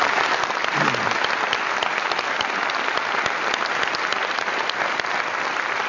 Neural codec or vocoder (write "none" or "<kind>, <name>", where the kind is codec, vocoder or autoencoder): none